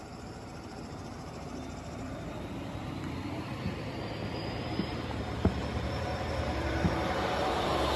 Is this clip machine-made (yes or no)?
yes